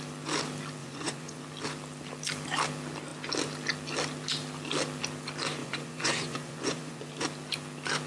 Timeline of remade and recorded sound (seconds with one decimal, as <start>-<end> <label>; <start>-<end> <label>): 0.0-0.8 recorded; 0.8-1.4 remade; 1.4-5.6 recorded; 5.6-7.1 remade; 7.1-8.1 recorded